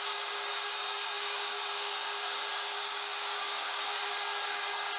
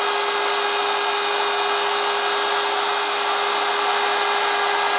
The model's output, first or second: first